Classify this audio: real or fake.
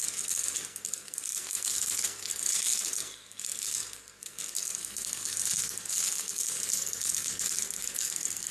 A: fake